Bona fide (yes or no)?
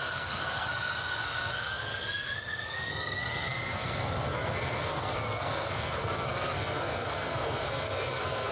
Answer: no